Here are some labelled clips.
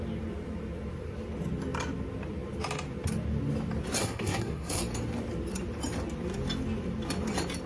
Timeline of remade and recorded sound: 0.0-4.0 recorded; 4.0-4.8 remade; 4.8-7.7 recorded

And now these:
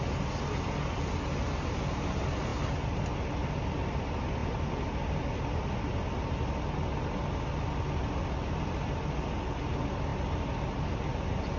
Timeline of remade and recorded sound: 0.0-11.6 recorded

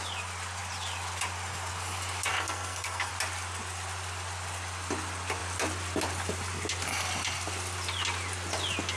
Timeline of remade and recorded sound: 0.0-2.3 recorded; 2.3-3.1 remade; 3.1-9.0 recorded